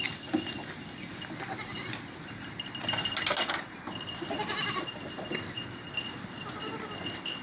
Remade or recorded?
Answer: recorded